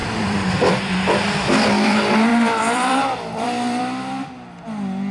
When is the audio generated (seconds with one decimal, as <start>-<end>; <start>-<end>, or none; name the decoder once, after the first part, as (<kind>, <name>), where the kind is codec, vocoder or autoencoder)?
0.0-1.0 (vocoder, BigVGAN v2); 2.3-3.8